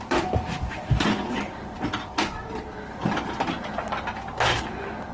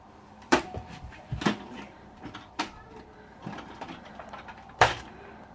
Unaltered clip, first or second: first